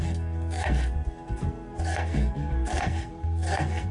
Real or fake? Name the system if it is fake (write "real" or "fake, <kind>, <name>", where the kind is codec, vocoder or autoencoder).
fake, codec, SNAC